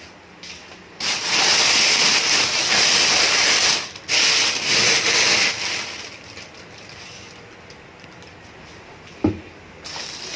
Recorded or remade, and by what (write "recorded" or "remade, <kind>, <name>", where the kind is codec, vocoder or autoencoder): recorded